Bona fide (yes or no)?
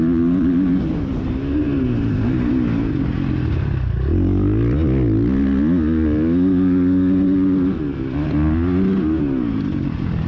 yes